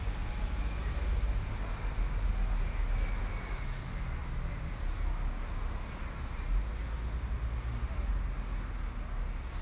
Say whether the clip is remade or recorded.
recorded